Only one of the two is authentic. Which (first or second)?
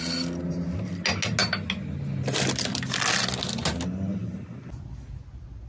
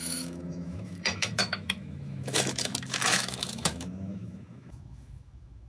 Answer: first